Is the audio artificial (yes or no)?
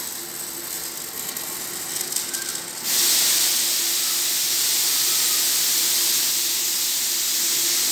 no